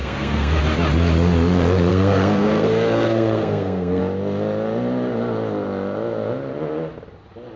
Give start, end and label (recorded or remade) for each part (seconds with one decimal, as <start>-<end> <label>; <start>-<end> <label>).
0.0-0.6 remade; 0.6-1.9 recorded; 1.9-4.0 remade; 4.0-7.6 recorded